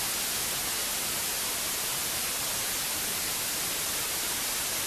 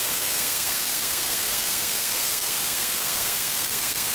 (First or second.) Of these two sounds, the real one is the first